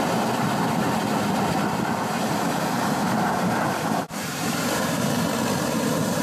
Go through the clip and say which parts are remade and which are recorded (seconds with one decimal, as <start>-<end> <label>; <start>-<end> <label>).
0.0-3.0 recorded; 3.0-5.1 remade; 5.1-6.2 recorded